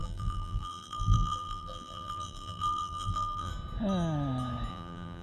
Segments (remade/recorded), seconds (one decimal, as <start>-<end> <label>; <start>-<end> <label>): 0.0-3.5 remade; 3.5-4.7 recorded; 4.7-5.2 remade